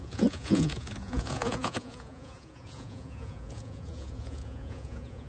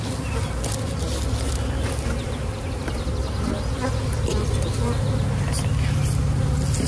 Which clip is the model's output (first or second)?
first